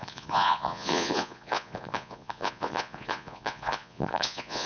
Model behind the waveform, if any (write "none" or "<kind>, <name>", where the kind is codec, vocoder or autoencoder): vocoder, Vocos